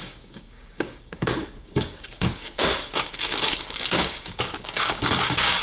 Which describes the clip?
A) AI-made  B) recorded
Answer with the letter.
A